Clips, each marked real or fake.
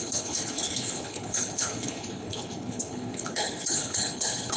fake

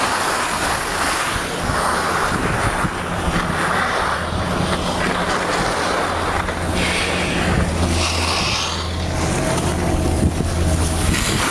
real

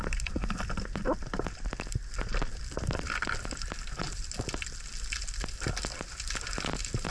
real